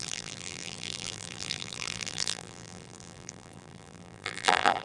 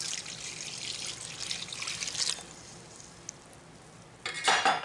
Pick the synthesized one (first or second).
first